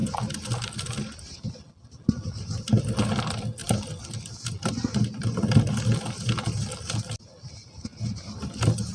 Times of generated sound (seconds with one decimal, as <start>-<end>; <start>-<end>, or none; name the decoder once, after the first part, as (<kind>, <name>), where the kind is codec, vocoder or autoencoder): none